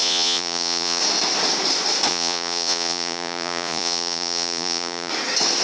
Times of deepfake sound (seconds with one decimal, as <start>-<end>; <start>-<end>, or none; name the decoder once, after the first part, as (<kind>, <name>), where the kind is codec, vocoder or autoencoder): 0.0-1.0 (vocoder, Vocos); 2.1-5.1